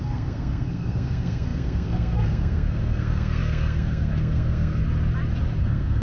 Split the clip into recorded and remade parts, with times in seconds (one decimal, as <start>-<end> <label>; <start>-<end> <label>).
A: 0.0-4.8 remade; 4.8-5.6 recorded; 5.6-6.0 remade